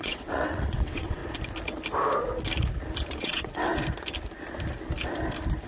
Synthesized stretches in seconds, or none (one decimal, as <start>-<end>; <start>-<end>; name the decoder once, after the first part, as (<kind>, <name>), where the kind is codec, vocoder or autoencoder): 0.0-1.2 (vocoder, WaveNeXt); 3.2-3.7